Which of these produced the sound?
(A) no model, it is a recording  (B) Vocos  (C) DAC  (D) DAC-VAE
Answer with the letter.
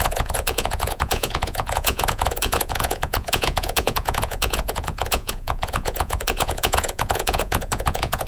B